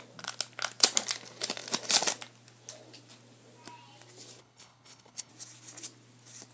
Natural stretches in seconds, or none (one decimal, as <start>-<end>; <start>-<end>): 0.0-4.4; 5.3-6.5

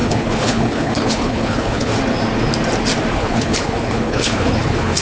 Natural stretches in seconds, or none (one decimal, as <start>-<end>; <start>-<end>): 1.9-3.1

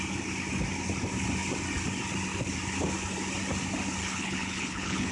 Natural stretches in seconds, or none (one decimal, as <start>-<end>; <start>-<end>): 0.0-4.0

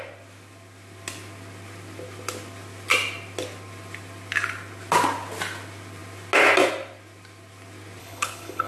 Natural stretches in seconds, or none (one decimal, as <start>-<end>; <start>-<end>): 0.0-8.0

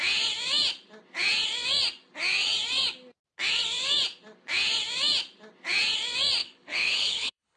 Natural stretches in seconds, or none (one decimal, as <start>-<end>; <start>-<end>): 0.0-6.4